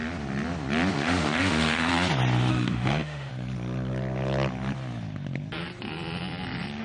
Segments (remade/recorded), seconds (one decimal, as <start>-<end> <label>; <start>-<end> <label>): 0.0-0.9 recorded; 0.9-1.9 remade; 1.9-2.5 recorded; 2.5-3.3 remade; 3.3-6.8 recorded